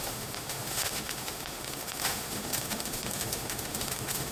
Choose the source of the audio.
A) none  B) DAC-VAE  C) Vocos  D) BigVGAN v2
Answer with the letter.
B